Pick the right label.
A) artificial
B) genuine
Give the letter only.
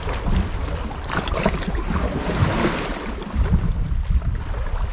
B